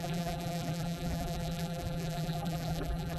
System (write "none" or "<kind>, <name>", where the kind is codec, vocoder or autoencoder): vocoder, BigVGAN v2